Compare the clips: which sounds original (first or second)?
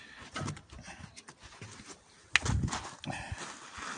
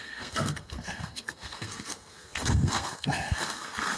first